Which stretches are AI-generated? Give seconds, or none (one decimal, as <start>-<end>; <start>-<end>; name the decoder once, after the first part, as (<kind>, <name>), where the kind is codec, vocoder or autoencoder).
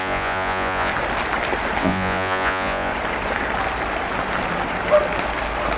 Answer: 0.0-0.9 (vocoder, Vocos); 1.8-2.9